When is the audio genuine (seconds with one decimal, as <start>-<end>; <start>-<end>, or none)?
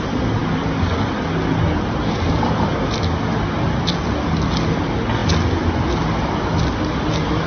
0.0-7.5